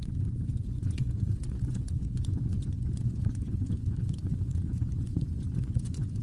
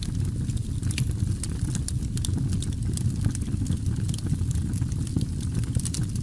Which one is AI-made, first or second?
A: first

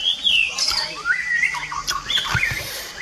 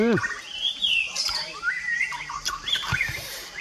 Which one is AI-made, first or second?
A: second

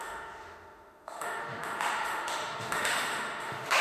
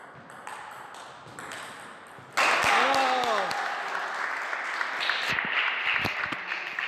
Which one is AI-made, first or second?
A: first